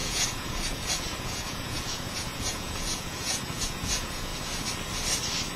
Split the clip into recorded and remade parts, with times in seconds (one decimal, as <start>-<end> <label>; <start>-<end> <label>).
0.0-4.3 remade; 4.3-5.6 recorded